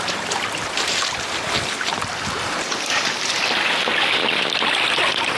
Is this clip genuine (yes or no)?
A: yes